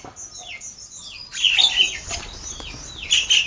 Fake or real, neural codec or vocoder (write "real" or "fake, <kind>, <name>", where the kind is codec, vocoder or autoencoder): real